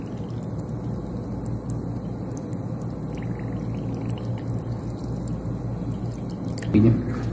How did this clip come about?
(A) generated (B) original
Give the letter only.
B